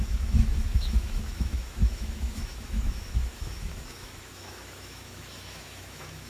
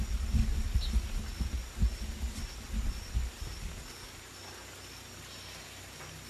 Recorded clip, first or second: second